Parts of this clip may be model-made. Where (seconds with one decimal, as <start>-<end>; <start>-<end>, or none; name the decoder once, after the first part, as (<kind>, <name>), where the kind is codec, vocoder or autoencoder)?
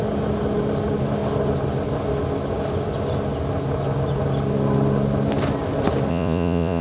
6.1-6.8 (vocoder, Vocos)